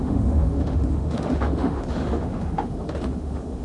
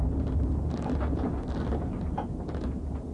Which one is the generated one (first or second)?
first